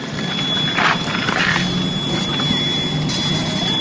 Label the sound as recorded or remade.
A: recorded